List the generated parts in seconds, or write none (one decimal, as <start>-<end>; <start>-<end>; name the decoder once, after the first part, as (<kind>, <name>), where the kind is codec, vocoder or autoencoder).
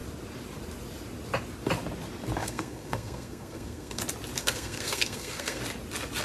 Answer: 2.4-4.0 (codec, SNAC); 4.4-5.6